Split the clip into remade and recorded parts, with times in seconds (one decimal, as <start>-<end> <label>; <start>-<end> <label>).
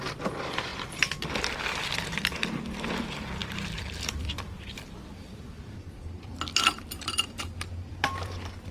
0.0-8.7 remade